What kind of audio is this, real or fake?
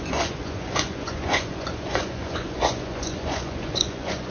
fake